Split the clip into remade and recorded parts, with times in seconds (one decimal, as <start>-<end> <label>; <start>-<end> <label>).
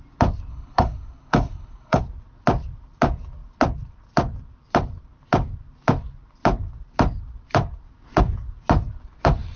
0.0-0.5 recorded; 0.5-2.0 remade; 2.0-9.6 recorded